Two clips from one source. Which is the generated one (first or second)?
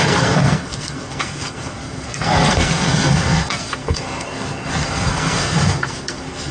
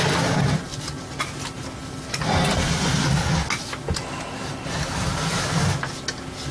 first